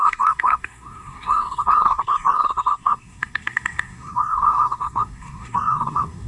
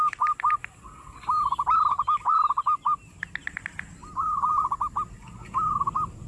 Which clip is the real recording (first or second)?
second